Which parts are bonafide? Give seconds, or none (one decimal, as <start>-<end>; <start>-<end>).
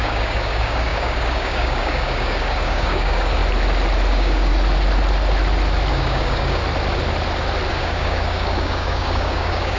3.4-4.1; 4.5-5.9; 6.6-7.7